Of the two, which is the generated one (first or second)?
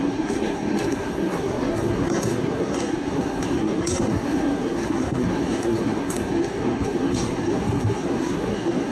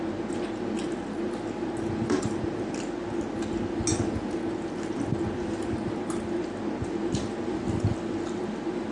first